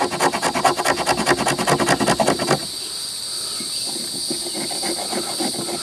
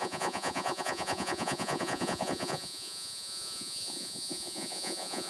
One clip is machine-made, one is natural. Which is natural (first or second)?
first